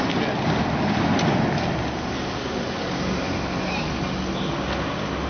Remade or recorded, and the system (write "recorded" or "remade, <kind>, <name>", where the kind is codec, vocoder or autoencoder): recorded